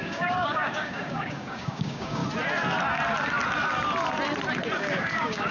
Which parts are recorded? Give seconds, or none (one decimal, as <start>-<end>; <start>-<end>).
2.2-4.8